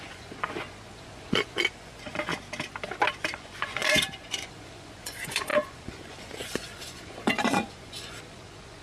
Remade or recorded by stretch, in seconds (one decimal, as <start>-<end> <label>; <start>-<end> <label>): 0.0-2.3 remade; 2.3-3.3 recorded; 3.3-8.8 remade